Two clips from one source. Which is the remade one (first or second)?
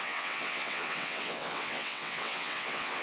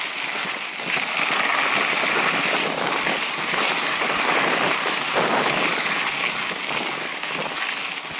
first